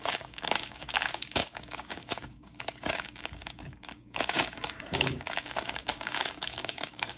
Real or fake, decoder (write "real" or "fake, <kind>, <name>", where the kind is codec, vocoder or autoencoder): fake, codec, DAC